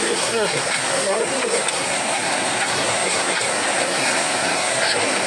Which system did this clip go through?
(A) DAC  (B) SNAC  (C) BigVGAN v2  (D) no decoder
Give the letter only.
B